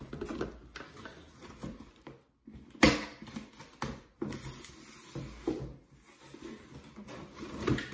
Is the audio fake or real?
real